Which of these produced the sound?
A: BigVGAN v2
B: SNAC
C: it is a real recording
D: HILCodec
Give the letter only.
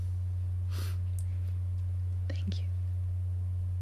C